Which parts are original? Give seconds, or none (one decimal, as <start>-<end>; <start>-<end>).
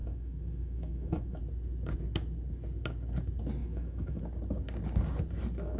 1.4-3.6; 4.2-5.8